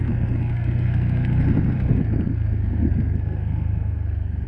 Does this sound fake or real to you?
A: fake